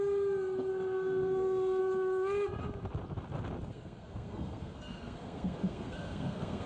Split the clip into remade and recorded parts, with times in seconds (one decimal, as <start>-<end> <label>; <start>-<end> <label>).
0.0-0.7 recorded; 0.7-1.8 remade; 1.8-3.7 recorded; 3.7-6.7 remade